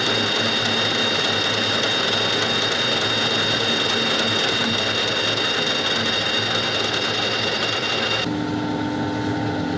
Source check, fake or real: real